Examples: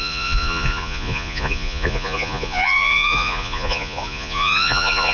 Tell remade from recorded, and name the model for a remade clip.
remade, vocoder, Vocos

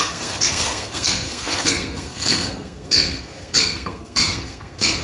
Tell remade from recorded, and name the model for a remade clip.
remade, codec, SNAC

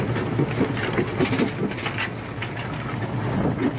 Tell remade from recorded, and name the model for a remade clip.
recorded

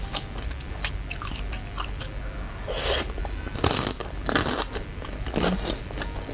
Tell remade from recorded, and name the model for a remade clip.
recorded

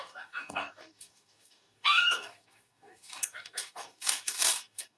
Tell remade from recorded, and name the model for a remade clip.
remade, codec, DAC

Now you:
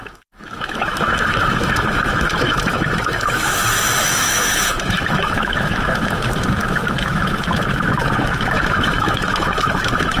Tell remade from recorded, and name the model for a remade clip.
remade, autoencoder, DAC-VAE